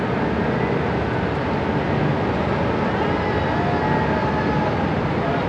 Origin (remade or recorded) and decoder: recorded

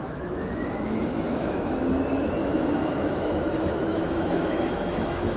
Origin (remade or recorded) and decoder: remade, autoencoder, DAC-VAE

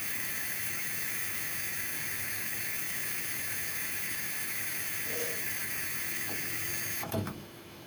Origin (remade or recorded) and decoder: remade, autoencoder, DAC-VAE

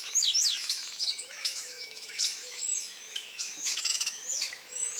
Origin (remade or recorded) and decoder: remade, autoencoder, DAC-VAE